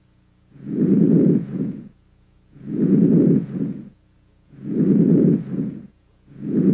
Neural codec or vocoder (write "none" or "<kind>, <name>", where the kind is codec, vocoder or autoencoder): vocoder, Vocos